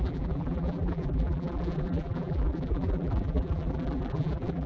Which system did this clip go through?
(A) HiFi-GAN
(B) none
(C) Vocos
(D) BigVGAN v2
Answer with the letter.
D